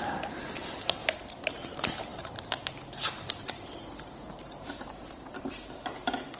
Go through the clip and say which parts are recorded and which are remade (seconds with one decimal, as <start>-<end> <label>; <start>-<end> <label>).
0.0-1.0 remade; 1.0-1.5 recorded; 1.5-6.4 remade